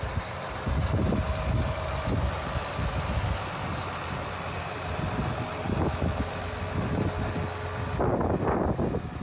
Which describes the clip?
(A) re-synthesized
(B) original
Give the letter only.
B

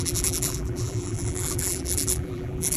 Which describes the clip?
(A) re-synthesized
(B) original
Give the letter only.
A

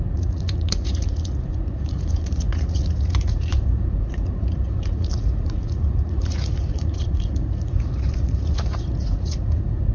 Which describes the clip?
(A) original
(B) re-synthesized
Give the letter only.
B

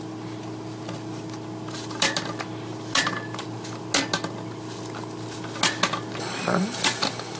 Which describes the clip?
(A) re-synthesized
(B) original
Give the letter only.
B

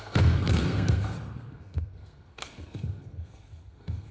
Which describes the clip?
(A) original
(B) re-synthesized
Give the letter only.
B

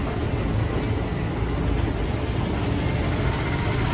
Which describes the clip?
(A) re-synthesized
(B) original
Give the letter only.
B